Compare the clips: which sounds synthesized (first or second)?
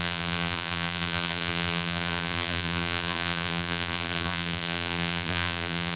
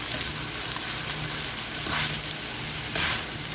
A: first